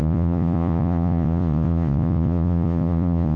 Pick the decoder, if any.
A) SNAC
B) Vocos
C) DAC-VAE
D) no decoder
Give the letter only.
B